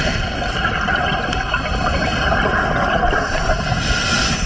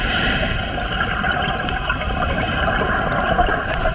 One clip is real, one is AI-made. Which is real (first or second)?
first